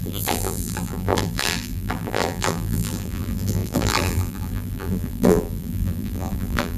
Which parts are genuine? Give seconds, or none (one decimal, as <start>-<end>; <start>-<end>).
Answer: none